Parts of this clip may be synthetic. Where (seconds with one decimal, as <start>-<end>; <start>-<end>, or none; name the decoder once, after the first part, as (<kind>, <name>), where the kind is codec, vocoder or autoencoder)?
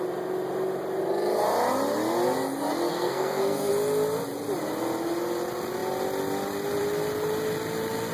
2.9-3.7 (codec, SNAC)